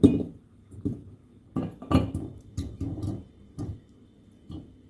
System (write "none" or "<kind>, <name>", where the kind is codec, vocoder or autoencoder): none